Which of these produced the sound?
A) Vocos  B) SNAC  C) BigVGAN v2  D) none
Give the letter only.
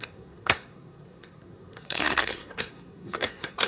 B